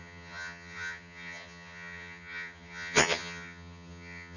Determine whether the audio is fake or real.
fake